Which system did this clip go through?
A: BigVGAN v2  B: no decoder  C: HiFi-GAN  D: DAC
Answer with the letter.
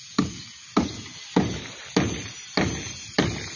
B